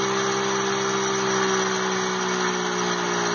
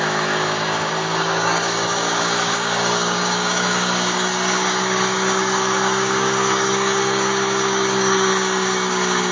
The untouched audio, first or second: first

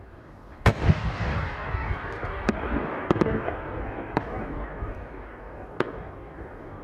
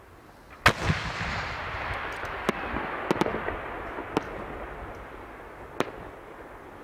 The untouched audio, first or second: second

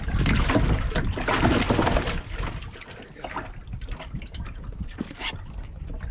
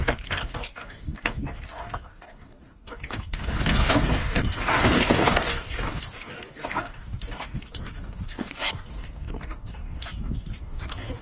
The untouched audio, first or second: first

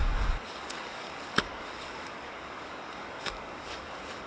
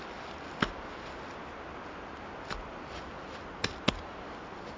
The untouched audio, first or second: second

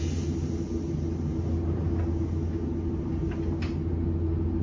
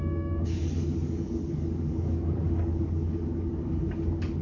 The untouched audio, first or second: first